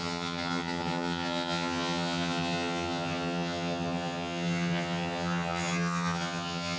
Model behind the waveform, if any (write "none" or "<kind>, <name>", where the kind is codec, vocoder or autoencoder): vocoder, HiFi-GAN